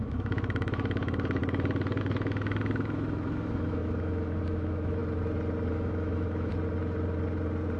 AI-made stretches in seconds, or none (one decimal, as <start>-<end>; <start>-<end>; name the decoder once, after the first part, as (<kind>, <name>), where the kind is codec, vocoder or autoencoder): 0.0-1.4 (autoencoder, DAC-VAE); 2.0-5.0; 5.7-6.5